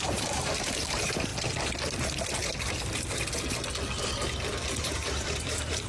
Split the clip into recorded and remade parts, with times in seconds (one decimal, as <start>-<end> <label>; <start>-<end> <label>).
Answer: 0.0-1.3 remade; 1.3-4.8 recorded; 4.8-5.9 remade